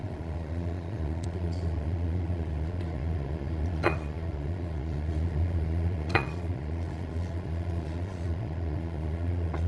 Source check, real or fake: fake